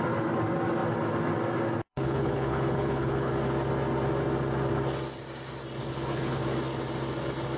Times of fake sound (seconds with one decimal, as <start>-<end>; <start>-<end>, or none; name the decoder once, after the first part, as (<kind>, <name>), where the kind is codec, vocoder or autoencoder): 1.9-3.3 (codec, HILCodec); 5.8-6.4